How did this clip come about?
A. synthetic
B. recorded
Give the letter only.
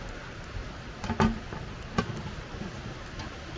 B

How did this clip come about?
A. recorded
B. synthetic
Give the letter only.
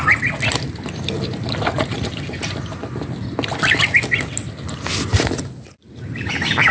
A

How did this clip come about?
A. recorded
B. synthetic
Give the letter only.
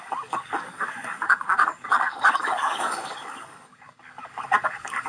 B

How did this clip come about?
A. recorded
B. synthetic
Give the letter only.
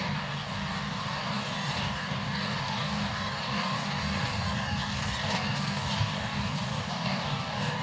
B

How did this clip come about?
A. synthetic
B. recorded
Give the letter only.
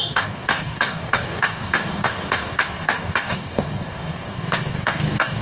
A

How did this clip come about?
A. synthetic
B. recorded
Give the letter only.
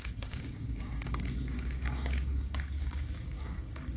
A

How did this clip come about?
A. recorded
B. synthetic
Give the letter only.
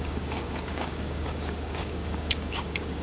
B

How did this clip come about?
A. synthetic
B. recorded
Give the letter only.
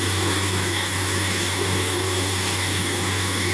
A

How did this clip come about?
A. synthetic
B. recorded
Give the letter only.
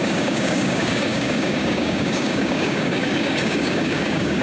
A